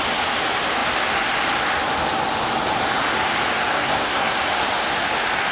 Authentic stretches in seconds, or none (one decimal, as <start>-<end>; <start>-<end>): 0.0-3.7; 4.3-5.5